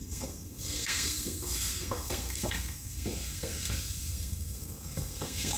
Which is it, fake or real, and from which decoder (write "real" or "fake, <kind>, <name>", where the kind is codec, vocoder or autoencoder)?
fake, codec, SNAC